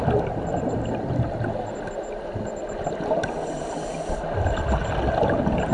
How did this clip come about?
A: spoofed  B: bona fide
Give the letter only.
B